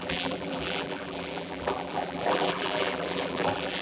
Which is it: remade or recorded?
remade